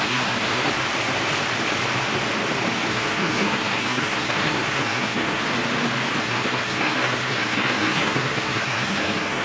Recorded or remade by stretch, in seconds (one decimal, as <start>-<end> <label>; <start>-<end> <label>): 0.0-0.7 remade; 0.7-2.9 recorded; 2.9-5.4 remade; 5.4-6.2 recorded; 6.2-9.4 remade